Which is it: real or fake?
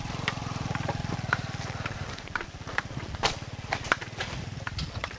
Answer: fake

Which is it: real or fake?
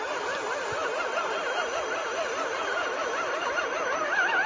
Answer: fake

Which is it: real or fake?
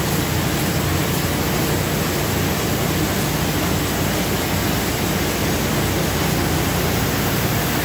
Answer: real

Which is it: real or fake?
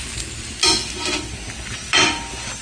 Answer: real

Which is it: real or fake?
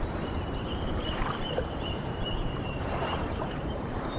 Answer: fake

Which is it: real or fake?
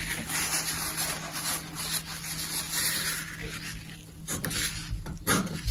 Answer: real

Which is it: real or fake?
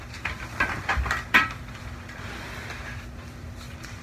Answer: fake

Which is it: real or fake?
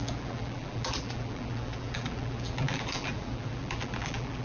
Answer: fake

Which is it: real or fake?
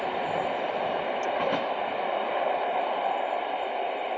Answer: fake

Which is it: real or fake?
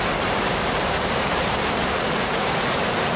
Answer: fake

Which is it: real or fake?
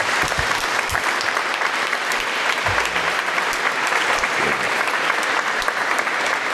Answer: fake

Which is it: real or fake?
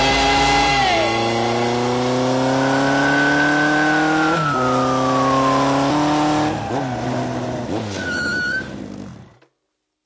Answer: real